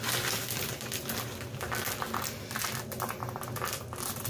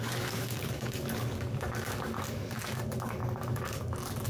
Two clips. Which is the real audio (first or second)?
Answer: first